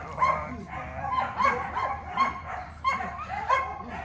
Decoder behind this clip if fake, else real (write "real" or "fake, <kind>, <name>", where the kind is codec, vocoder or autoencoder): fake, vocoder, BigVGAN v2